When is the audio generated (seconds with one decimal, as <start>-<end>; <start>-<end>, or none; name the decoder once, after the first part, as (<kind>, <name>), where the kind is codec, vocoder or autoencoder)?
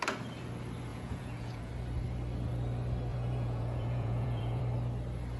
0.9-1.7 (vocoder, Vocos); 3.1-4.6